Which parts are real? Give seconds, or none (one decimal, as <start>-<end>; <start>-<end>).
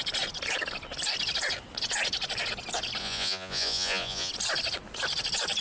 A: 0.0-3.0; 4.3-5.6